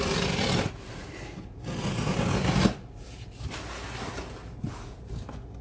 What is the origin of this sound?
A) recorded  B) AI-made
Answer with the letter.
A